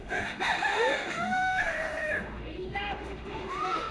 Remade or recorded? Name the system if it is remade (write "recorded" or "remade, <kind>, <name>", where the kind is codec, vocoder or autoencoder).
remade, autoencoder, DAC-VAE